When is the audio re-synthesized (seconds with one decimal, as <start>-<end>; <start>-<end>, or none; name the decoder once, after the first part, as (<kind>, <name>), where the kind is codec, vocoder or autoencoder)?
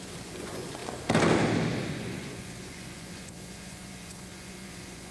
0.0-0.8 (vocoder, Vocos); 1.9-5.1